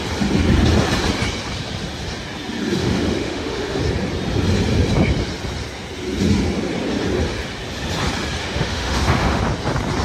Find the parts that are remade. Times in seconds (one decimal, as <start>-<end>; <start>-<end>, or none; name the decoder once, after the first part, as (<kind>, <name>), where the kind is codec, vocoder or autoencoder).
2.8-3.8 (autoencoder, DAC-VAE); 8.4-9.4